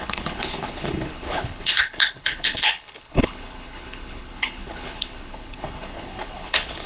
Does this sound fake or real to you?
fake